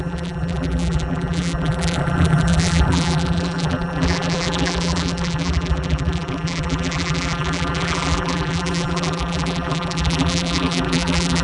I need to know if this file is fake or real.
fake